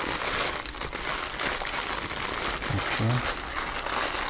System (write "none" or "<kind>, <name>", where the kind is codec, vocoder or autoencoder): none